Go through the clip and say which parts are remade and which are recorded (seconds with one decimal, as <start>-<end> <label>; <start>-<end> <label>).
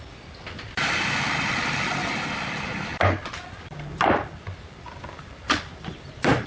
0.0-6.5 recorded